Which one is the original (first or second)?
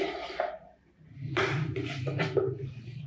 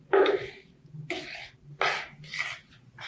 second